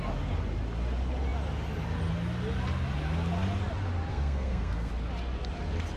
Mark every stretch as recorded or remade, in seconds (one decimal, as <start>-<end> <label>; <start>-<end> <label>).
0.0-4.1 recorded; 4.1-4.9 remade; 4.9-6.0 recorded